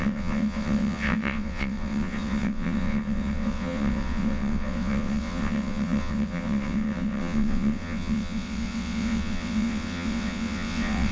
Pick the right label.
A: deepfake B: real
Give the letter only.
A